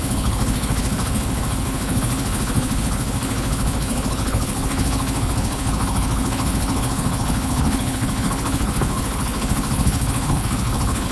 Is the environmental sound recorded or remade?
remade